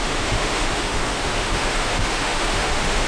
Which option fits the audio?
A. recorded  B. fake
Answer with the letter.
B